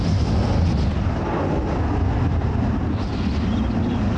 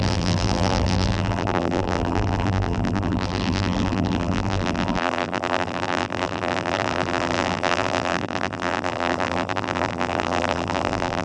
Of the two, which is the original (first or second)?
first